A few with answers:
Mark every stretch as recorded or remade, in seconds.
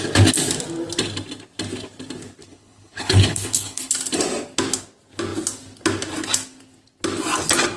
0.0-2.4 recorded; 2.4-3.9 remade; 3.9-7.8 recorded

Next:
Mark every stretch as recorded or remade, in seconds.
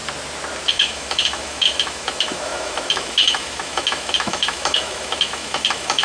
0.0-0.7 recorded; 0.7-6.0 remade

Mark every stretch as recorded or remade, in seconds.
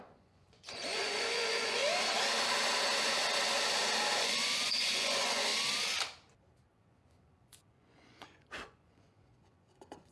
0.0-1.8 remade; 1.8-4.2 recorded; 4.2-5.5 remade; 5.5-6.7 recorded; 6.7-10.1 remade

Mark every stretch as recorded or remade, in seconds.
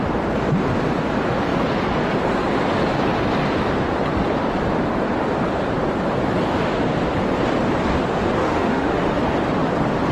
0.0-8.4 recorded; 8.4-9.0 remade; 9.0-10.1 recorded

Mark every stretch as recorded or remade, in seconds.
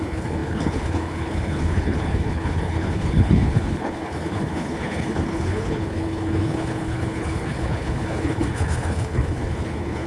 0.0-10.1 remade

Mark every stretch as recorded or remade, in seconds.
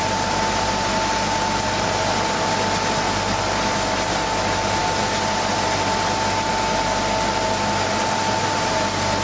0.0-9.2 recorded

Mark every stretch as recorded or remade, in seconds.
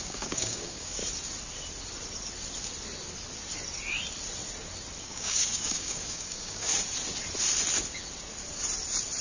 0.0-1.0 remade; 1.0-5.0 recorded; 5.0-6.7 remade; 6.7-9.2 recorded